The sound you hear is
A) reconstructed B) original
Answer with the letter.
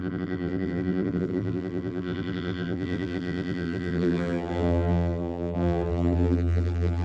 A